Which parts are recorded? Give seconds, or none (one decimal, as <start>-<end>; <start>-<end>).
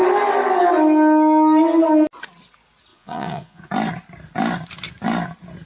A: 0.0-2.9; 3.7-5.7